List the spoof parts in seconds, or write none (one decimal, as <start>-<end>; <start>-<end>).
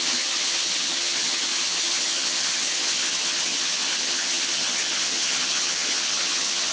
0.0-6.7